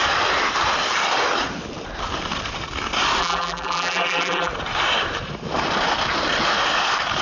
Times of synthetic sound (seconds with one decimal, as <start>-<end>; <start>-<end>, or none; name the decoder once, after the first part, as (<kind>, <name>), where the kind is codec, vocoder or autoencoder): 3.2-4.5 (vocoder, BigVGAN v2)